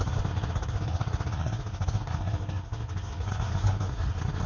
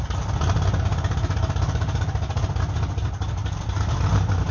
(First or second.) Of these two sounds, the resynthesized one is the first